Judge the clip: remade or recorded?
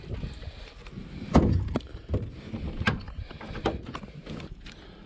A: recorded